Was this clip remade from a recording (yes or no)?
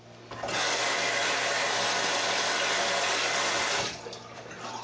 no